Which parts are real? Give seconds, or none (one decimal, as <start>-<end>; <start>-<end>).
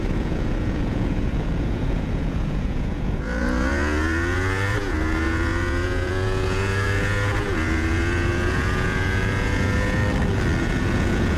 10.0-10.6